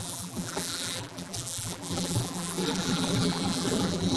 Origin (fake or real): fake